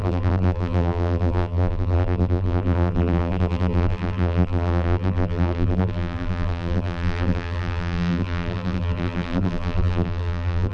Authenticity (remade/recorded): remade